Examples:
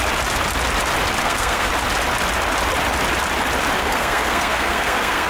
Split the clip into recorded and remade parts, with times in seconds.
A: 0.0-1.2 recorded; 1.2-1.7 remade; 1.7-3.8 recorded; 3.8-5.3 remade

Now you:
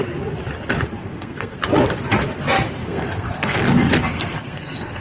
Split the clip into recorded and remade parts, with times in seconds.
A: 0.0-1.0 recorded; 1.0-1.6 remade; 1.6-2.8 recorded; 2.8-3.6 remade; 3.6-4.1 recorded; 4.1-5.0 remade

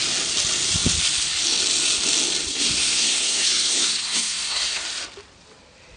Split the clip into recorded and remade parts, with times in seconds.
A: 0.0-2.5 recorded; 2.5-4.8 remade; 4.8-6.0 recorded

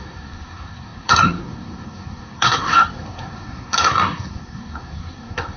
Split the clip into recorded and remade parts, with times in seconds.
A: 0.0-5.6 remade

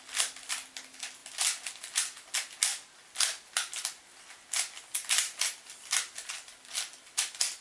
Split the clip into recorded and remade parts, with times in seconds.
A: 0.0-7.6 recorded

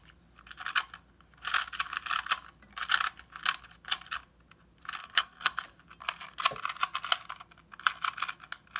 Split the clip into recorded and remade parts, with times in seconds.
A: 0.0-5.0 recorded; 5.0-5.6 remade; 5.6-8.8 recorded